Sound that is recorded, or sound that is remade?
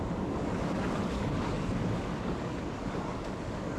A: remade